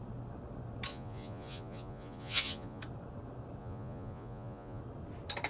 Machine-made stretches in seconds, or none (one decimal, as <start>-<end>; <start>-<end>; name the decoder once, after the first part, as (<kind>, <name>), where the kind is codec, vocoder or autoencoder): 0.9-2.8 (vocoder, Vocos); 3.6-4.8